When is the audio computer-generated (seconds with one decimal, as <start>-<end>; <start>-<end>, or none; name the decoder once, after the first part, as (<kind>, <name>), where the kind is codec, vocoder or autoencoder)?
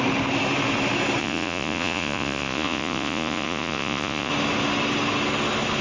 1.2-4.3 (vocoder, Vocos)